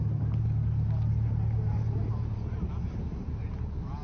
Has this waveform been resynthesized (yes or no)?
no